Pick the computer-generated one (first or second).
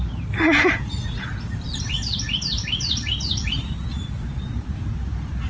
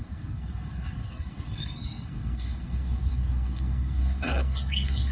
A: second